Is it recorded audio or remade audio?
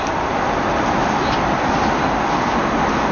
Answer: recorded